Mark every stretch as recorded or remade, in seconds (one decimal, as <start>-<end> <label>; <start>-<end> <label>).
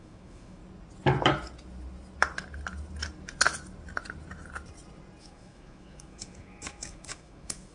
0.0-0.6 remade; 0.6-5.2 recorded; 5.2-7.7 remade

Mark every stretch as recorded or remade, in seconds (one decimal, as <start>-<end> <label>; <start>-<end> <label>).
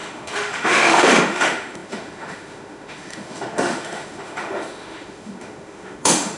0.0-6.4 remade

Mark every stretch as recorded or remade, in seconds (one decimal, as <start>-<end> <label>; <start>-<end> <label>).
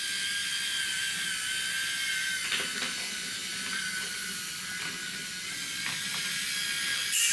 0.0-7.3 recorded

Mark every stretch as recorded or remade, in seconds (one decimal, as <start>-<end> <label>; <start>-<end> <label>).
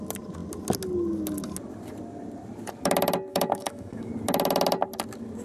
0.0-3.3 recorded; 3.3-4.1 remade; 4.1-5.4 recorded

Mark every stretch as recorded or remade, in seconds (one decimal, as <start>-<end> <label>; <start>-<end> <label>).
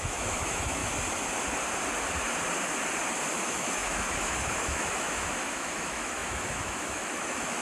0.0-0.8 remade; 0.8-3.4 recorded; 3.4-7.6 remade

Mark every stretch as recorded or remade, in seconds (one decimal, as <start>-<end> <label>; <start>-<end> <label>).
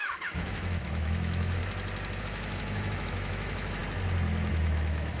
0.0-1.6 remade; 1.6-2.2 recorded; 2.2-3.8 remade; 3.8-4.5 recorded; 4.5-5.2 remade